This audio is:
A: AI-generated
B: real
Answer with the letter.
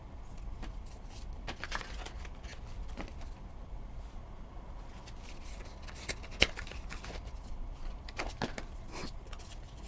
B